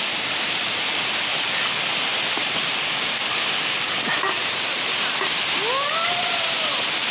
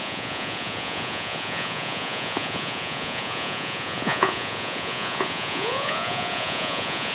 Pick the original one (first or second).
first